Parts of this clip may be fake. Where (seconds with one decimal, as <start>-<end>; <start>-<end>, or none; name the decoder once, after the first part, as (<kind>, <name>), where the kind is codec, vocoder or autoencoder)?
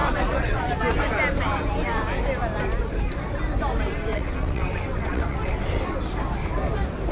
0.0-0.7 (vocoder, WaveNeXt); 4.1-5.8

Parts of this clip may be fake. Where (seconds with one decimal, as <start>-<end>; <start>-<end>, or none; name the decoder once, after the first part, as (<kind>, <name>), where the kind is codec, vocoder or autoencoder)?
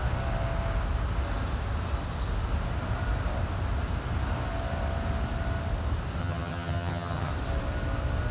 6.2-7.3 (vocoder, HiFi-GAN)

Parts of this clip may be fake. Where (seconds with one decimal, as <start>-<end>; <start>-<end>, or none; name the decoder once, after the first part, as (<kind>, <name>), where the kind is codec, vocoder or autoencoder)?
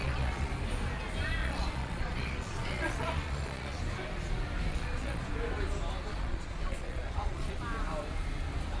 0.0-0.5 (vocoder, Vocos); 1.4-3.8; 4.7-5.3; 6.1-7.6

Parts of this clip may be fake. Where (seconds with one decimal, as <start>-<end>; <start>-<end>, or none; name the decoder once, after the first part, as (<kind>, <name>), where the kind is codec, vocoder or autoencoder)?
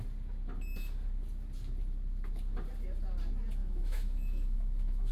3.6-5.1 (autoencoder, DAC-VAE)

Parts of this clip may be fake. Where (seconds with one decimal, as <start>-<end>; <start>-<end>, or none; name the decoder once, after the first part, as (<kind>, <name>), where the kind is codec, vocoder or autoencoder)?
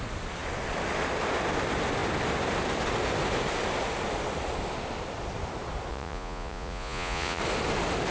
5.9-7.4 (vocoder, Vocos)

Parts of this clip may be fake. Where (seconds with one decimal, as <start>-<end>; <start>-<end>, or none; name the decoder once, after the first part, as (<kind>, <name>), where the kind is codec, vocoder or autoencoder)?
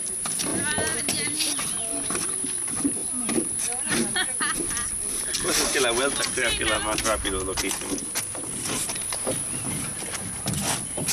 none